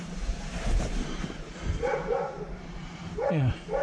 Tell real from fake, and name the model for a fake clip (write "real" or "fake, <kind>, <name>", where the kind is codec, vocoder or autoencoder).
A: fake, vocoder, BigVGAN v2